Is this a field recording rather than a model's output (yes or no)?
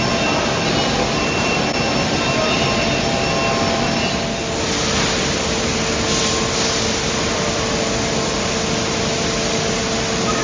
yes